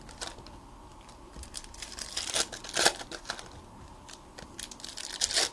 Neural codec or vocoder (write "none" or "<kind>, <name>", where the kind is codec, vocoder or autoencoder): none